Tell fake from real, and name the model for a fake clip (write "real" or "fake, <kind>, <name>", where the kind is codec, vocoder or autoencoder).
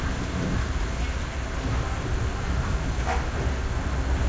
real